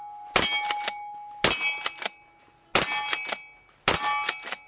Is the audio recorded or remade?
recorded